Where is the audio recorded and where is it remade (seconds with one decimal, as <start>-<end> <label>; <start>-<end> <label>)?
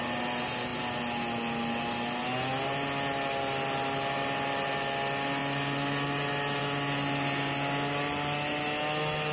0.0-9.3 recorded